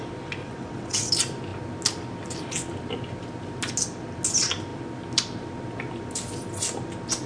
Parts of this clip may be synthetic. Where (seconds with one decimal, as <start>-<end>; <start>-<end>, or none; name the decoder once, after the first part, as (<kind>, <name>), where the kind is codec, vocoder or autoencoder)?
0.4-1.1 (vocoder, WaveNeXt)